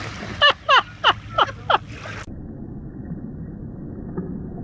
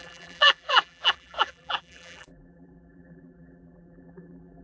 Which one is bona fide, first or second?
first